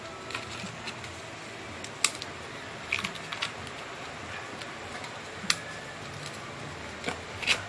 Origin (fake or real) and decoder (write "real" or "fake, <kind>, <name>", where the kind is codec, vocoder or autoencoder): real